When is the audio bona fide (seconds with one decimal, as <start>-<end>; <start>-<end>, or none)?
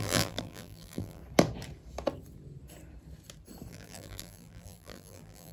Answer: 1.2-3.7